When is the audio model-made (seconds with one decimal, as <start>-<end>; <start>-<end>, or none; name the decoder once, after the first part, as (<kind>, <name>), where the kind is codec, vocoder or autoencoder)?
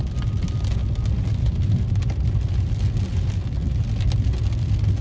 none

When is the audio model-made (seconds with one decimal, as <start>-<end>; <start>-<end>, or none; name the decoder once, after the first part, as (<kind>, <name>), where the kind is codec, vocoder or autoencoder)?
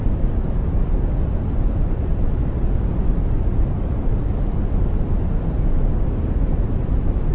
0.0-0.6 (vocoder, BigVGAN v2); 1.3-4.3; 6.5-7.3